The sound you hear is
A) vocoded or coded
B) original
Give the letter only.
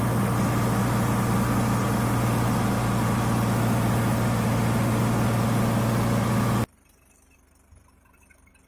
B